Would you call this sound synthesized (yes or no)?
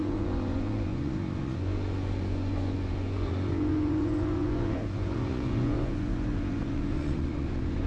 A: yes